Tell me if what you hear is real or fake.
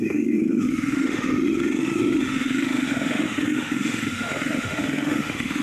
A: fake